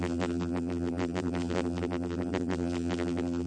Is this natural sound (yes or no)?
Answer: no